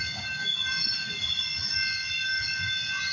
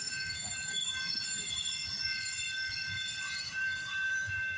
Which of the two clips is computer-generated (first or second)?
second